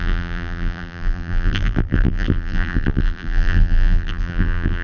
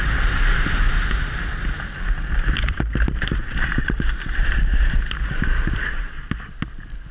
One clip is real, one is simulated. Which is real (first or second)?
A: second